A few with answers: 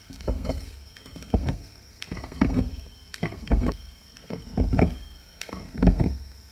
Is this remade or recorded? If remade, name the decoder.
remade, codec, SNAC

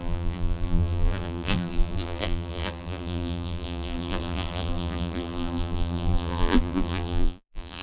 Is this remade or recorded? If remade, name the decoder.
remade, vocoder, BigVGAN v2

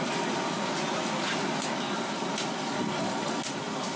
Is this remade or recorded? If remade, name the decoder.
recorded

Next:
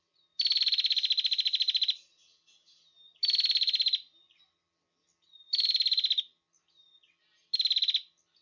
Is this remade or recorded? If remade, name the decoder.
recorded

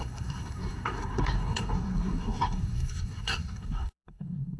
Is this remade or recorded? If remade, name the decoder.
remade, codec, SNAC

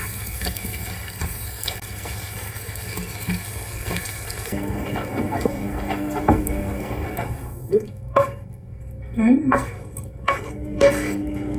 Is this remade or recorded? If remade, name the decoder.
remade, codec, SNAC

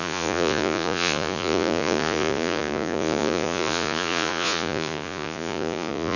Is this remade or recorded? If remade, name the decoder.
remade, vocoder, Vocos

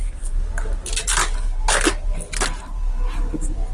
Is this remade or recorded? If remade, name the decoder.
recorded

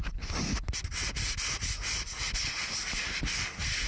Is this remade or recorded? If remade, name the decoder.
recorded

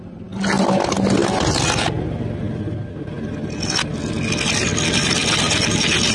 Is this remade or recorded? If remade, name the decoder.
recorded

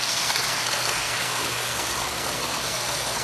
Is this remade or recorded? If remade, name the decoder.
remade, codec, SNAC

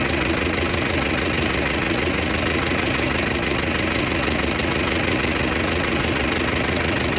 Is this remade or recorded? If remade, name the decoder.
remade, vocoder, Vocos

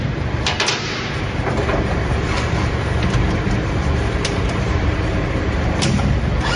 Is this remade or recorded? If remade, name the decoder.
remade, vocoder, BigVGAN v2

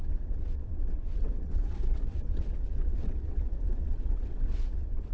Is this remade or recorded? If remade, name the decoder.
remade, vocoder, WaveNeXt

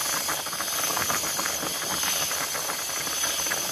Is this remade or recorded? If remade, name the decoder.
recorded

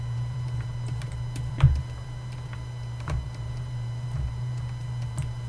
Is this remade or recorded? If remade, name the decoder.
remade, vocoder, BigVGAN v2